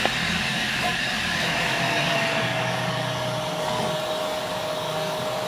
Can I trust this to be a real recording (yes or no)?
no